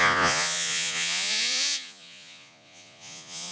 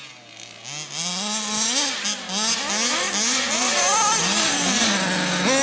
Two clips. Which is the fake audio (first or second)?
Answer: first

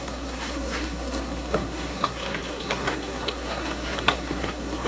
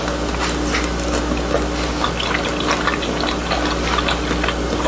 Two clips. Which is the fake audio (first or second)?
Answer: first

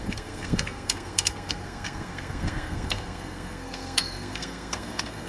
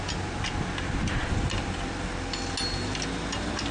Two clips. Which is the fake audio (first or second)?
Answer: first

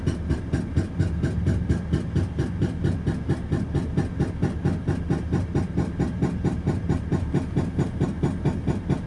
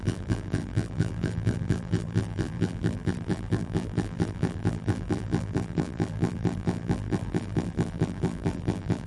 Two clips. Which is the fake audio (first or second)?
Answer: second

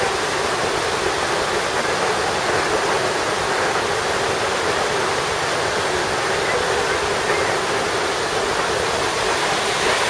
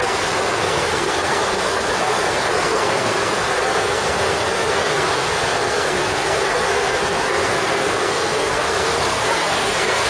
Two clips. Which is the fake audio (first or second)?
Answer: second